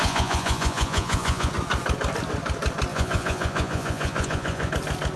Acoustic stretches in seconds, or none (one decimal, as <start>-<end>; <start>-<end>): 1.5-2.9; 4.7-5.2